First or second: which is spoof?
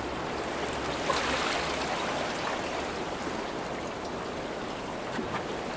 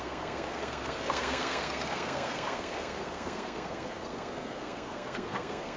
second